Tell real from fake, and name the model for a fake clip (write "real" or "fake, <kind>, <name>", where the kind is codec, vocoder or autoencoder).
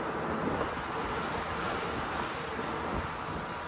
real